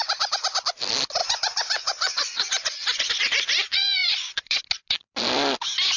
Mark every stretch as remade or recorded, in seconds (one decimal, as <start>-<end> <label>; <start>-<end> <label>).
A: 0.0-1.2 recorded; 1.2-4.6 remade; 4.6-6.0 recorded